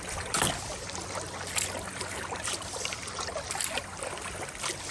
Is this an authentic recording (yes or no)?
yes